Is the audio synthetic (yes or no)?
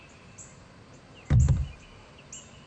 no